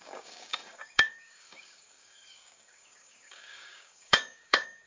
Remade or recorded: remade